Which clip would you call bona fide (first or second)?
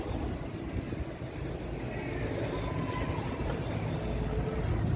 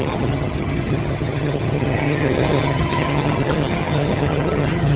first